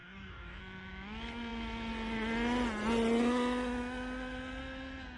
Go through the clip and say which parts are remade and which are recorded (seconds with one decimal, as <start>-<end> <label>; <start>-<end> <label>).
0.0-0.6 remade; 0.6-5.2 recorded